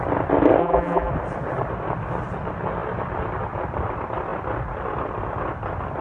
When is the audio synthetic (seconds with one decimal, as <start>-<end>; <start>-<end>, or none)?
0.6-1.1